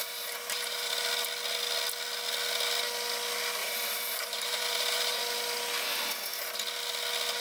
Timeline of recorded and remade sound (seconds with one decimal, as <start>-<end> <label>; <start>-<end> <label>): 0.0-0.9 remade; 0.9-3.6 recorded; 3.6-5.2 remade; 5.2-7.4 recorded